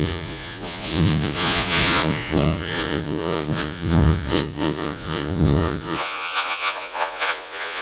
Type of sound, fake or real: fake